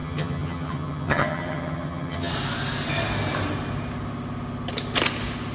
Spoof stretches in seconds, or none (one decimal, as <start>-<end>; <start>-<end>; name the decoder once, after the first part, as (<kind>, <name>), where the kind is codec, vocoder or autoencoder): 0.0-2.3 (vocoder, HiFi-GAN)